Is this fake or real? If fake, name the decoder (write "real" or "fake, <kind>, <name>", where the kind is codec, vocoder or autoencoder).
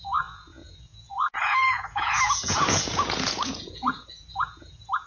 fake, vocoder, Vocos